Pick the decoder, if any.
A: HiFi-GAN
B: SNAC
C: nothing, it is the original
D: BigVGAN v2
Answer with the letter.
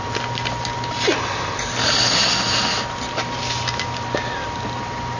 C